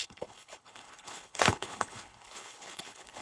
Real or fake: fake